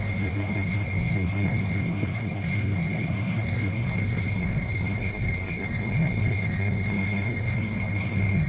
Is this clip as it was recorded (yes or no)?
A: no